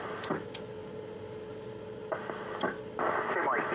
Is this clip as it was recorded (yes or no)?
yes